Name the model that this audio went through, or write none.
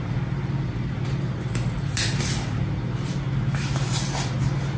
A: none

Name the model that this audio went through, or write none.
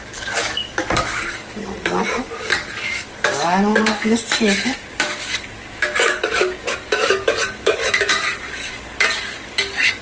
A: codec, DAC